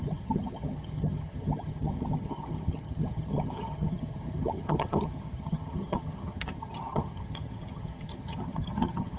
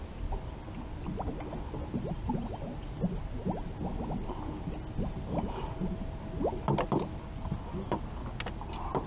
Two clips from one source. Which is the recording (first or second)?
second